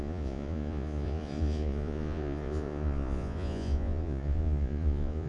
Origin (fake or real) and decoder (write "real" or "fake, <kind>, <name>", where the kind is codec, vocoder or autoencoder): fake, vocoder, Vocos